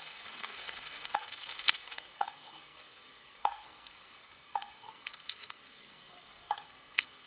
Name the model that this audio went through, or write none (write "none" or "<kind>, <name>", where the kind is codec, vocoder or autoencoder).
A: codec, SNAC